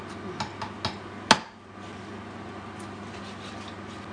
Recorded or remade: recorded